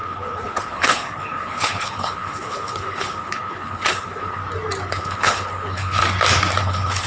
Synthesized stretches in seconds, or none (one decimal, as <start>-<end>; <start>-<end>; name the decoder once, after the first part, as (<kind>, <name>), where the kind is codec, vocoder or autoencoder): 0.0-4.4 (codec, HILCodec); 4.9-6.0; 6.6-7.1